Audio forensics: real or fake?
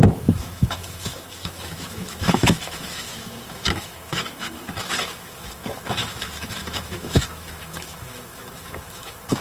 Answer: fake